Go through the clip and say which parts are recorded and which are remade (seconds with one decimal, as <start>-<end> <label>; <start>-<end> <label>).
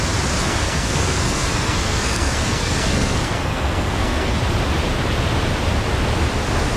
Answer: 0.0-0.4 recorded; 0.4-4.4 remade; 4.4-6.8 recorded